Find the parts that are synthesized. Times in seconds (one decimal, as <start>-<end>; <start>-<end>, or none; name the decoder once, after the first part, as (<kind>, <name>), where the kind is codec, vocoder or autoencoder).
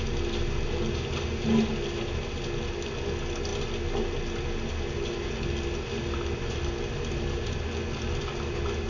none